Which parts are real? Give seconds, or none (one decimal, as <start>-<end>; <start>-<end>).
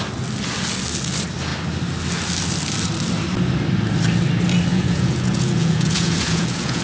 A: 0.0-4.7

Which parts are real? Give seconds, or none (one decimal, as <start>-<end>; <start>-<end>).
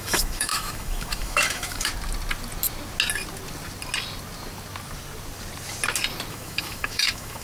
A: 1.9-6.3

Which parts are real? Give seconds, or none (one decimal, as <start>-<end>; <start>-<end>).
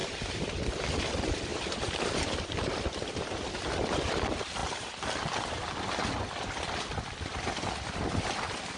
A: 0.0-8.8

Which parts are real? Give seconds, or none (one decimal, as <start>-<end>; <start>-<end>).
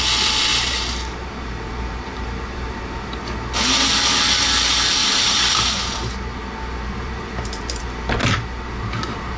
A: 0.0-0.5; 3.1-5.0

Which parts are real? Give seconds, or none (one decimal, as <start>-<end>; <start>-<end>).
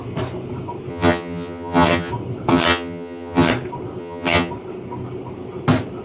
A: 0.0-0.9; 2.1-2.5; 3.5-4.0; 4.5-6.0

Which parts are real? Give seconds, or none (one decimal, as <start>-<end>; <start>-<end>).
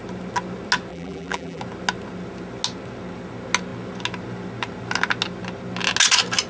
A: 0.0-0.9; 1.6-6.5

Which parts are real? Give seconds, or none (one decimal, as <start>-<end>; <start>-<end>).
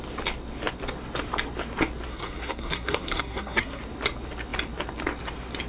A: 0.0-2.1; 3.8-5.7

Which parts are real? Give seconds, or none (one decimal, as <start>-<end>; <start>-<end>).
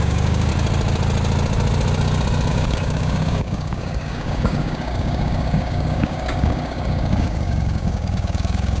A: 0.5-2.5